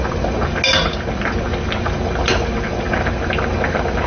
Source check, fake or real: real